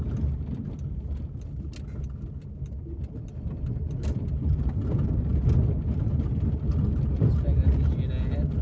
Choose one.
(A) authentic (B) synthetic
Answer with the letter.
A